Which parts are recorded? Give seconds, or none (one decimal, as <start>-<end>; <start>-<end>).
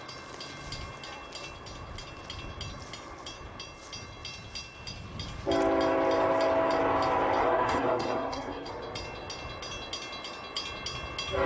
0.0-7.4; 8.7-11.5